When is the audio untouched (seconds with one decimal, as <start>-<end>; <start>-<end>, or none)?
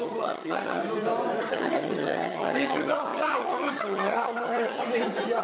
0.8-1.5; 4.8-5.4